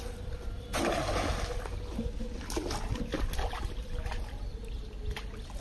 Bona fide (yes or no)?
yes